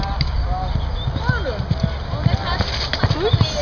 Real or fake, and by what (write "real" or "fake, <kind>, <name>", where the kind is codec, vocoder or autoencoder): real